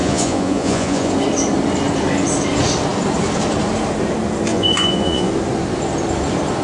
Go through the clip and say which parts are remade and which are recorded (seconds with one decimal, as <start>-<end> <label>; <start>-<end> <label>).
0.0-1.1 remade; 1.1-4.5 recorded; 4.5-5.3 remade; 5.3-6.6 recorded